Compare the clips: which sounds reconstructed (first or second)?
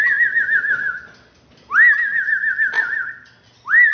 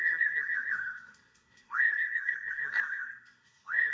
second